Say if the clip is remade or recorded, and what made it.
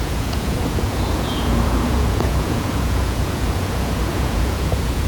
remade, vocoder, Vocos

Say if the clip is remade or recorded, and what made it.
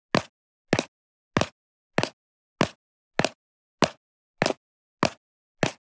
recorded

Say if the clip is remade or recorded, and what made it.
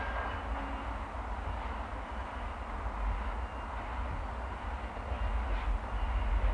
recorded